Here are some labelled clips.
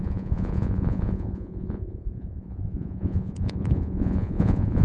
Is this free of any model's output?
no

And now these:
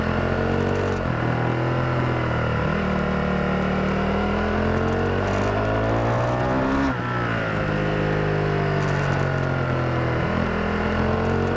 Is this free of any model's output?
yes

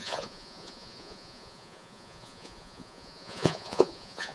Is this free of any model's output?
no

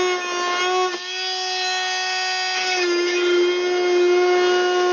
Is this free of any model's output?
yes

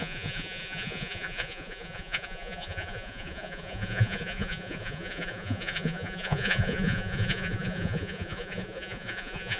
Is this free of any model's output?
no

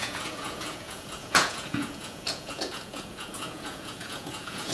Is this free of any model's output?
no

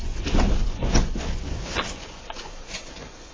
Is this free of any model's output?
no